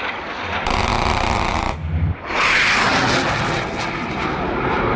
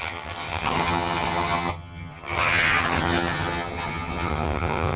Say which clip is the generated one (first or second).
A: second